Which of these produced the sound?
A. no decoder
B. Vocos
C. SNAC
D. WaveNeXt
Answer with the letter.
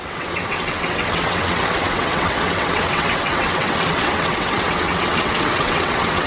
D